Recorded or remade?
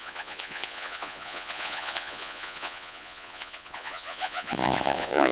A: remade